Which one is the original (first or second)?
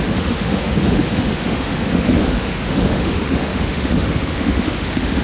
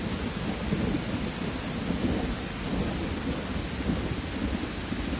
second